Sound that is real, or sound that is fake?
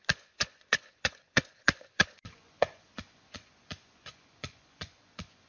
fake